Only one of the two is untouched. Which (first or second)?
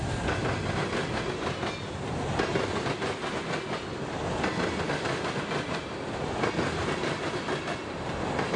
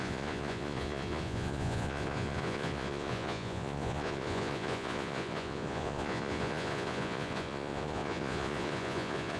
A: first